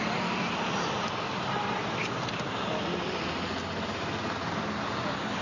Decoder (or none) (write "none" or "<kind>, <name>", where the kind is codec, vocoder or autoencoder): none